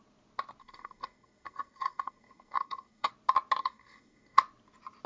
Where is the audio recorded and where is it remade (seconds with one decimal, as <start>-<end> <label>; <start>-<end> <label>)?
0.0-0.6 recorded; 0.6-3.1 remade; 3.1-3.6 recorded; 3.6-4.4 remade; 4.4-5.1 recorded